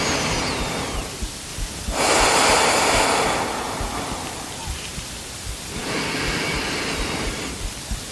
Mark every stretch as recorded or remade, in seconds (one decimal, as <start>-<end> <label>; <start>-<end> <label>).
0.0-4.6 recorded; 4.6-5.1 remade; 5.1-8.1 recorded